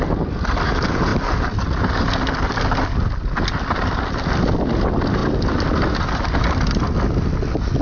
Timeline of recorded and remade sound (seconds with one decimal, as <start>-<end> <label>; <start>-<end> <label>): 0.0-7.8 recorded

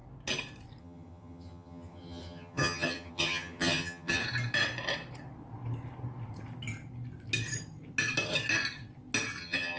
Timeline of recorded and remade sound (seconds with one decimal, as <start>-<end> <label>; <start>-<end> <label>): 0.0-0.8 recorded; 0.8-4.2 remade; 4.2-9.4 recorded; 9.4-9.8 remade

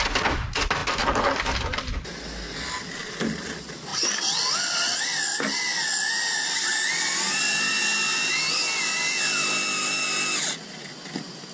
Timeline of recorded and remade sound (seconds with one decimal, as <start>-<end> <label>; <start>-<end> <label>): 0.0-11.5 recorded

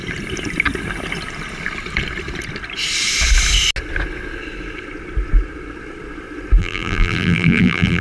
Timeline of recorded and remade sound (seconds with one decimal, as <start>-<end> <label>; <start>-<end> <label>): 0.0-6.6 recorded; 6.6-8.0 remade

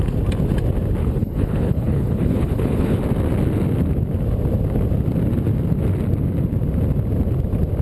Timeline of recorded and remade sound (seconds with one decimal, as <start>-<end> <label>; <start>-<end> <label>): 0.0-1.0 recorded; 1.0-3.0 remade; 3.0-7.8 recorded

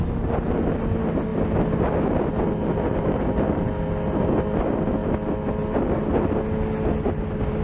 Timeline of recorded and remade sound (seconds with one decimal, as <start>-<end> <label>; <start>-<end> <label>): 0.0-7.6 recorded

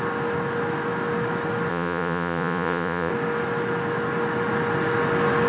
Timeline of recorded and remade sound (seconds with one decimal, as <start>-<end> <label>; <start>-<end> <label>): 0.0-1.7 recorded; 1.7-3.1 remade; 3.1-5.5 recorded